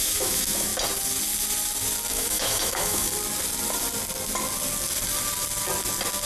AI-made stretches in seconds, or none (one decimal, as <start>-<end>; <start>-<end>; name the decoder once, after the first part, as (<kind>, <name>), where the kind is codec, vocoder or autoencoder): 0.0-0.7 (autoencoder, DAC-VAE); 2.1-3.1